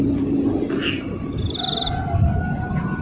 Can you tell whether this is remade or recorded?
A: recorded